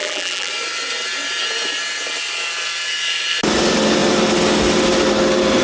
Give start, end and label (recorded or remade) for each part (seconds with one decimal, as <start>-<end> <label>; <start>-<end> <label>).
0.0-0.5 remade; 0.5-5.6 recorded